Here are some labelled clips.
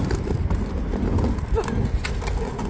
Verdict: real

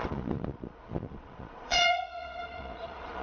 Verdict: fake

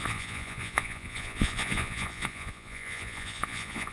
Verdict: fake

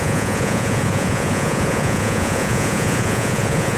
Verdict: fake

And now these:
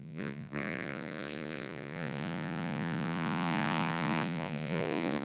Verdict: fake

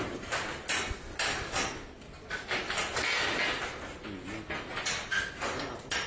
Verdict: real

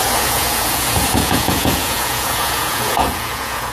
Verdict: fake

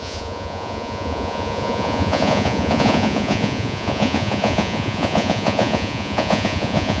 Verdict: fake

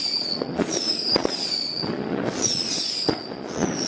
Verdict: fake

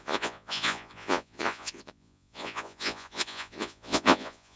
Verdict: fake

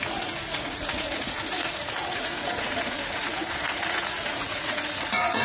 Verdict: fake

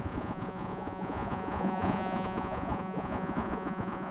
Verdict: fake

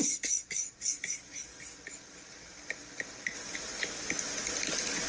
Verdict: real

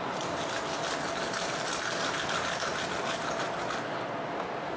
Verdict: real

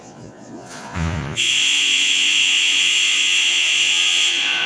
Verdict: fake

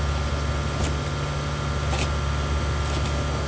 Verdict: real